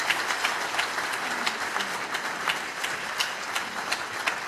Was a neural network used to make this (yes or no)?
no